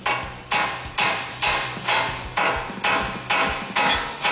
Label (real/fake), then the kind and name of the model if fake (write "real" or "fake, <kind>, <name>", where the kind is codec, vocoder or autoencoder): real